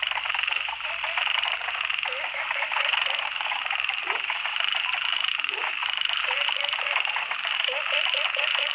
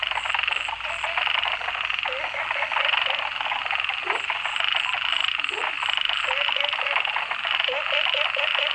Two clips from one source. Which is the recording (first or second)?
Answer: second